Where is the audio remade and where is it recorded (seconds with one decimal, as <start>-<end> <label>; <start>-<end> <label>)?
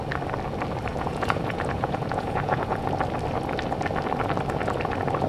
0.0-0.9 recorded; 0.9-2.9 remade; 2.9-5.3 recorded